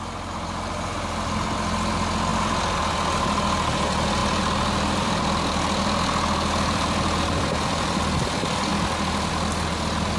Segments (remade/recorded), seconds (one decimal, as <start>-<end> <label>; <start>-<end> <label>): 0.0-2.3 recorded; 2.3-2.9 remade; 2.9-4.2 recorded; 4.2-8.0 remade; 8.0-8.7 recorded; 8.7-9.3 remade; 9.3-10.2 recorded